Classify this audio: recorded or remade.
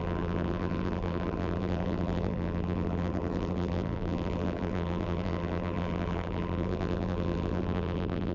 remade